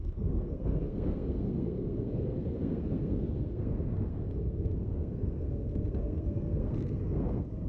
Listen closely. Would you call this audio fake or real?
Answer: fake